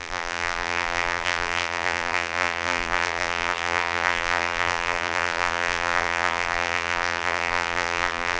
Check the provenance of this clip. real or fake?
fake